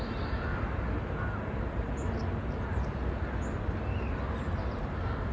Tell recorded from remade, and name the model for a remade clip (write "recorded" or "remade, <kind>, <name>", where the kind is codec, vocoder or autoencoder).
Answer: recorded